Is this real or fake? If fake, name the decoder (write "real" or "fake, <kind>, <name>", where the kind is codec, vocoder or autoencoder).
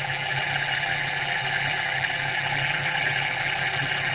fake, vocoder, BigVGAN v2